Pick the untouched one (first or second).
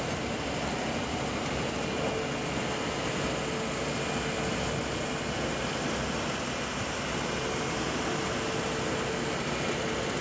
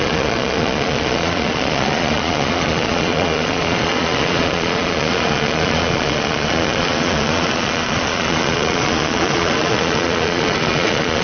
first